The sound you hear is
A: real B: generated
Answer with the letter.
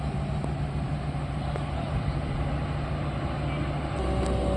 A